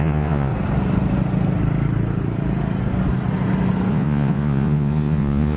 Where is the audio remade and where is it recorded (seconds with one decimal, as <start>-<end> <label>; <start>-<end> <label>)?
0.0-0.5 remade; 0.5-3.9 recorded; 3.9-5.6 remade